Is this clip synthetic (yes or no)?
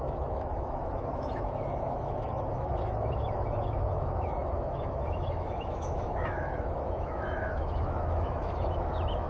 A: yes